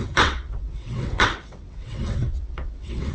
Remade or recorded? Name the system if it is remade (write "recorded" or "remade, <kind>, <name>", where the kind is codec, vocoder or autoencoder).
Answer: remade, vocoder, WaveNeXt